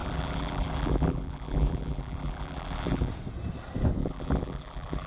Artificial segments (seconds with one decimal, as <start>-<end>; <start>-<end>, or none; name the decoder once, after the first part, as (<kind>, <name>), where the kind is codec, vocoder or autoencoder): 0.0-3.1 (vocoder, BigVGAN v2); 4.0-5.1